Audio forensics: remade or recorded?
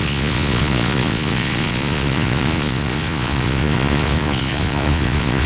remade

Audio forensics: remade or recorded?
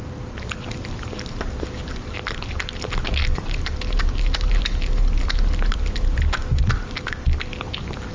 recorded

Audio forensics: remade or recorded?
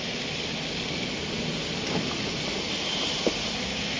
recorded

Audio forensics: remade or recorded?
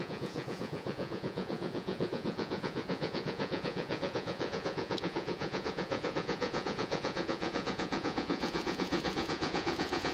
remade